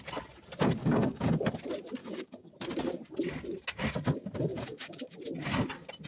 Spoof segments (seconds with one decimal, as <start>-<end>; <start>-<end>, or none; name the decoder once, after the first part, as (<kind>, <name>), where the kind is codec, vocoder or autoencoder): 0.8-1.4 (codec, DAC); 2.0-2.5; 4.5-5.2